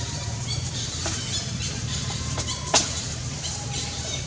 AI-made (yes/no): yes